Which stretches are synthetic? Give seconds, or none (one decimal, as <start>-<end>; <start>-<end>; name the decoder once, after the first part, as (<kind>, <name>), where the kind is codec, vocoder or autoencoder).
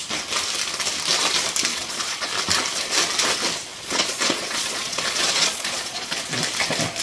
1.7-2.3 (vocoder, Vocos); 3.7-6.2